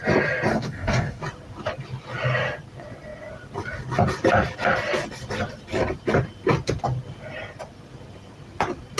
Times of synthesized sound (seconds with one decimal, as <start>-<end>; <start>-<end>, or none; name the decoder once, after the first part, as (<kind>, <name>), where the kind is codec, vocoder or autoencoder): 0.5-1.2 (codec, DAC)